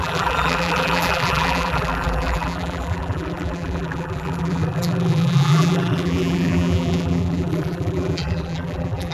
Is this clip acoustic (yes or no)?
no